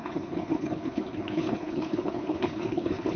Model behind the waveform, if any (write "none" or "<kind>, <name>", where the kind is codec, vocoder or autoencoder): codec, HILCodec